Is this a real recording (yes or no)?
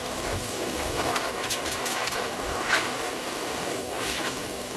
no